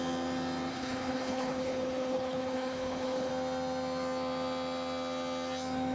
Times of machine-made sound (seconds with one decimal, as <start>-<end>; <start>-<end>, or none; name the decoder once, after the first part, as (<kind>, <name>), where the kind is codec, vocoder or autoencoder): 0.7-3.3 (codec, HILCodec)